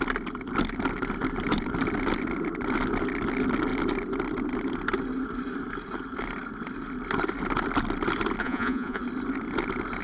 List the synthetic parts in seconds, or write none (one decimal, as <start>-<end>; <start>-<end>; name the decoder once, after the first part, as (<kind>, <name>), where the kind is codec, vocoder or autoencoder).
8.4-9.0 (vocoder, Vocos)